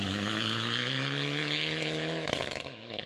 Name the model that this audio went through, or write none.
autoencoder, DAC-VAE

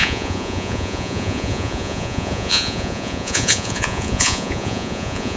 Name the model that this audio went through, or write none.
vocoder, Vocos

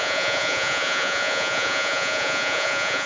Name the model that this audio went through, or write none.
vocoder, Vocos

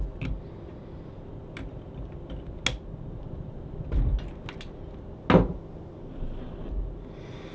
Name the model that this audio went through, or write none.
none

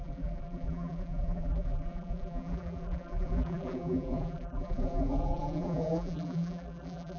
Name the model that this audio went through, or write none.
vocoder, BigVGAN v2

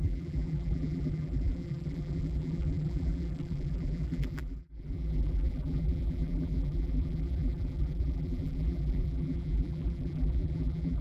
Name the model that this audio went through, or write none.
vocoder, BigVGAN v2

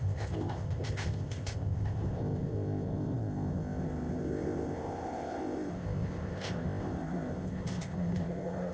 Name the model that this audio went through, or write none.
codec, ZipCodec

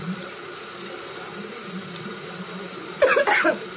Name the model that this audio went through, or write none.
none